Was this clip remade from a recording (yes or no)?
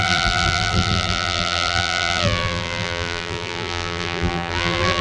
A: yes